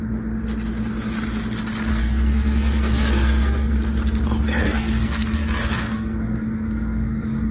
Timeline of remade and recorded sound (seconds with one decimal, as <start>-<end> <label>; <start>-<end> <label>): 0.0-1.9 recorded; 1.9-3.8 remade; 3.8-4.6 recorded; 4.6-7.5 remade